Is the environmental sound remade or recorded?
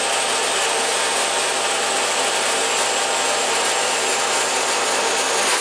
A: recorded